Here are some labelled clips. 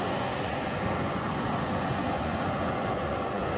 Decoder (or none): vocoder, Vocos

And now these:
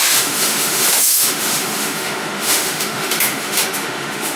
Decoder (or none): autoencoder, DAC-VAE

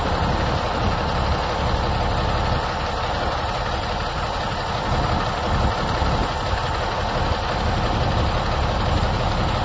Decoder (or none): none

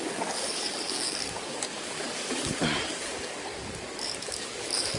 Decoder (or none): codec, DAC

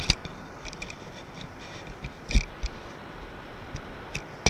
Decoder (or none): none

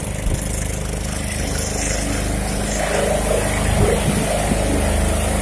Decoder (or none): none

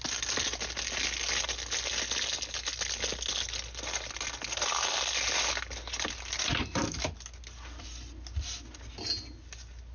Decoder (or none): none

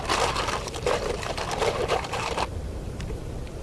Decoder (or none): vocoder, BigVGAN v2